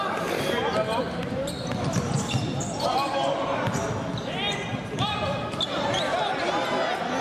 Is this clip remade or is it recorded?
recorded